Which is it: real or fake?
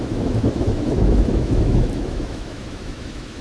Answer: fake